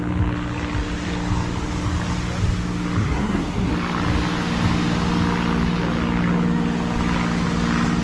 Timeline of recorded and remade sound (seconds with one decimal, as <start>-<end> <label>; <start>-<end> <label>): 0.0-3.0 recorded; 3.0-3.7 remade; 3.7-8.0 recorded

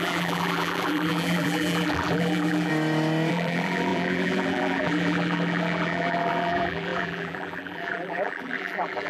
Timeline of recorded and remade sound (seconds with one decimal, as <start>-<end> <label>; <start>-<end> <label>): 0.0-2.7 remade; 2.7-3.3 recorded; 3.3-9.1 remade

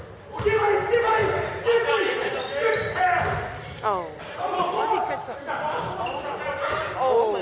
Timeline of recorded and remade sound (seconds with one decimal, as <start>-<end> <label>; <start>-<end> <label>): 0.0-7.4 recorded

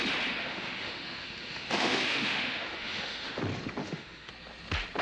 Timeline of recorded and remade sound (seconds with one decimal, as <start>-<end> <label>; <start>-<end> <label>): 0.0-0.4 recorded; 0.4-3.4 remade; 3.4-3.8 recorded; 3.8-4.3 remade; 4.3-5.0 recorded

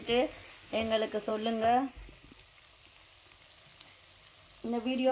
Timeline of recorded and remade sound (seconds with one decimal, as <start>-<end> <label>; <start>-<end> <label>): 0.0-5.1 recorded

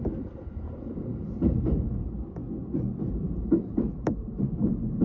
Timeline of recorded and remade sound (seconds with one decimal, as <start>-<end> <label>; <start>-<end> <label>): 0.0-2.4 remade; 2.4-3.1 recorded; 3.1-5.0 remade

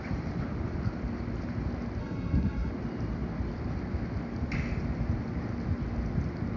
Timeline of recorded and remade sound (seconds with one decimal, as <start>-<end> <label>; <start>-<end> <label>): 0.0-2.0 recorded; 2.0-2.7 remade; 2.7-6.6 recorded

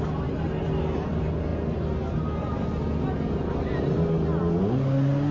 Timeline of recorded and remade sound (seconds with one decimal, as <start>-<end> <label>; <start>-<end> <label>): 0.0-5.3 recorded